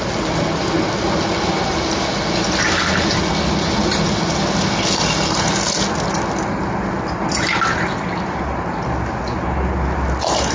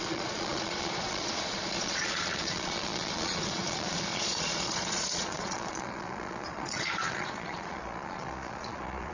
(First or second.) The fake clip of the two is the second